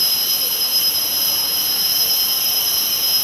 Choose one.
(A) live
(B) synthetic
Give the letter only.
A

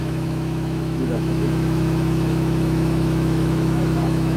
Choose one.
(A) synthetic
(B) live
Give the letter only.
A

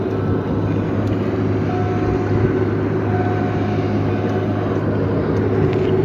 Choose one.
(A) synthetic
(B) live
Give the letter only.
B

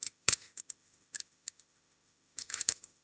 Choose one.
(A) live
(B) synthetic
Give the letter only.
B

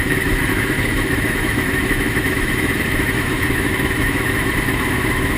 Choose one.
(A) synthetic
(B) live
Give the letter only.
A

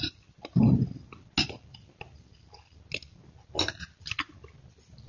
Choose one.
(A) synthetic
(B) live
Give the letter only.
B